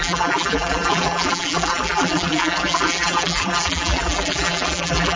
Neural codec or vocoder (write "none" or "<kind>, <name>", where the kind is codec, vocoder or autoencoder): vocoder, BigVGAN v2